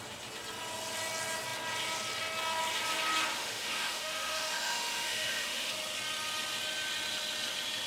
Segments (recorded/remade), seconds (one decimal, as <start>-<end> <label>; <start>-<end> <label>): 0.0-3.3 recorded; 3.3-5.7 remade; 5.7-7.9 recorded